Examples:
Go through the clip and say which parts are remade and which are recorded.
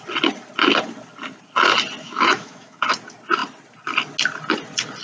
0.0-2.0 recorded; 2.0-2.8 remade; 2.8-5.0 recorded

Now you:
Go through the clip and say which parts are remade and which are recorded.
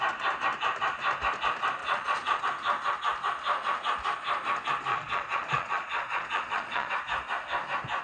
0.0-1.8 recorded; 1.8-2.4 remade; 2.4-4.9 recorded; 4.9-6.9 remade; 6.9-8.0 recorded